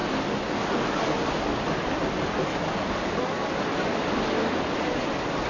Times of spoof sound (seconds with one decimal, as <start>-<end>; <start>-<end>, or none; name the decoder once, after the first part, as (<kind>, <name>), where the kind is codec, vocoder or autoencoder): none